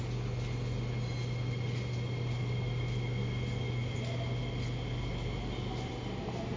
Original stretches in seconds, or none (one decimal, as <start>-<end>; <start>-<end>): 0.0-6.6